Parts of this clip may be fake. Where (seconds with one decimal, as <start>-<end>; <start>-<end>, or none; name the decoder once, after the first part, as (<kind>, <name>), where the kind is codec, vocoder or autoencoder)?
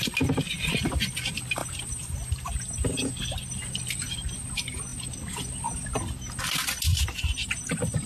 1.6-3.1 (vocoder, BigVGAN v2); 6.9-8.1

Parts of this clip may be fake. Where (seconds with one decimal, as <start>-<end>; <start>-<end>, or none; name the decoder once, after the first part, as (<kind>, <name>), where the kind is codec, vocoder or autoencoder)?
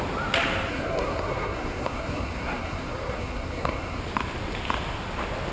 0.7-4.0 (codec, SNAC)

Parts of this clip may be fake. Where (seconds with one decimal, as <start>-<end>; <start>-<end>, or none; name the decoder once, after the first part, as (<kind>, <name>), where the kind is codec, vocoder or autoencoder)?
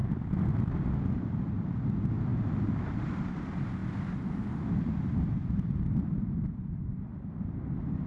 2.3-3.4 (vocoder, BigVGAN v2); 3.8-5.7; 7.1-8.1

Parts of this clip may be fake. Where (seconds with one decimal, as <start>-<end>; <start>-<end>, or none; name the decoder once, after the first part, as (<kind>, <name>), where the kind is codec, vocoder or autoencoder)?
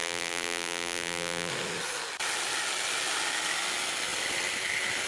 0.0-1.5 (vocoder, BigVGAN v2)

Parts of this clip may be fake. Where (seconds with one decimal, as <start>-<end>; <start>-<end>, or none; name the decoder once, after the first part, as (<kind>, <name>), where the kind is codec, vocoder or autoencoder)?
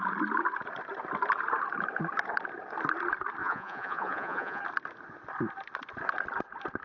3.4-4.6 (vocoder, Vocos)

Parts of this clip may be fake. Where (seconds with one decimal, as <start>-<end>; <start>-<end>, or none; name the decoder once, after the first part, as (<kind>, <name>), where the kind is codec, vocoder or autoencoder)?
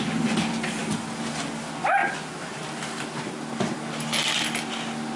none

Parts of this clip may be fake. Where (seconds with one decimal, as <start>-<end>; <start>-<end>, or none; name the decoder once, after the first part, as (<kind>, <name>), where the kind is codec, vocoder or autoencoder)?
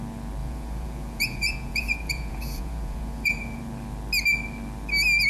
0.4-3.6 (vocoder, Vocos)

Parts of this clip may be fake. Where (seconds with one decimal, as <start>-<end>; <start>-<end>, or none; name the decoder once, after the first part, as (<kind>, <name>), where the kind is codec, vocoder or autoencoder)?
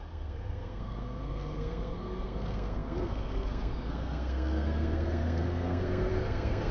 0.0-6.7 (codec, SNAC)